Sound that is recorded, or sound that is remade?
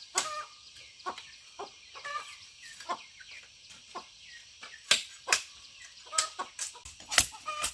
recorded